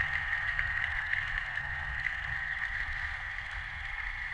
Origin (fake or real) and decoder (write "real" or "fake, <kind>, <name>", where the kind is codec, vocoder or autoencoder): fake, codec, SNAC